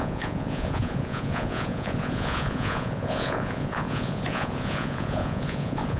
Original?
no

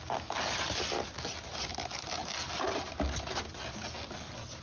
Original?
yes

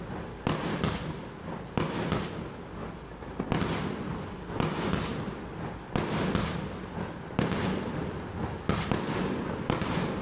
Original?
yes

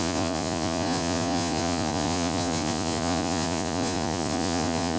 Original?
no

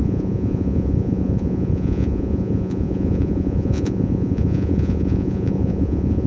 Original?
no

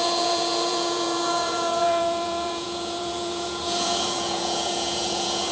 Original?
no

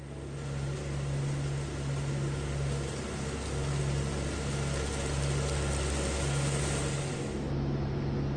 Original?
yes